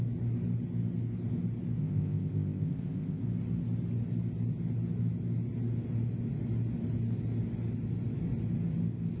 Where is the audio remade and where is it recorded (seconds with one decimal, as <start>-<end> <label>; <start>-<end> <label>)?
0.0-1.8 recorded; 1.8-3.2 remade; 3.2-9.2 recorded